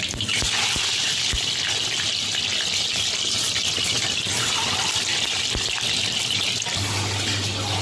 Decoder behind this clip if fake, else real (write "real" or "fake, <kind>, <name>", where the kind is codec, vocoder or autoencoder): real